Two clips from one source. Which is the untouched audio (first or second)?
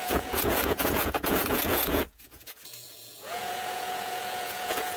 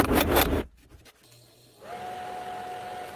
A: second